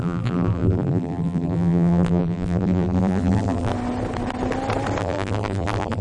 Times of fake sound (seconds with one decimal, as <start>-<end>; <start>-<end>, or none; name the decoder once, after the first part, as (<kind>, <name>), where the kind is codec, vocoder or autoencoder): 0.0-3.7 (vocoder, BigVGAN v2); 5.0-6.0